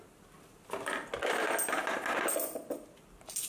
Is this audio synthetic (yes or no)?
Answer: no